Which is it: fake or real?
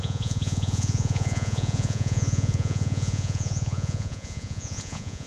fake